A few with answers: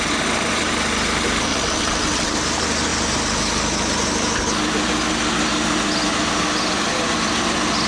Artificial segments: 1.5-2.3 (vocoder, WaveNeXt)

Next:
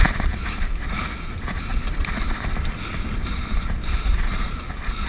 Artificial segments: none

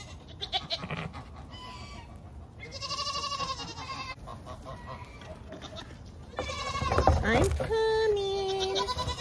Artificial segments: none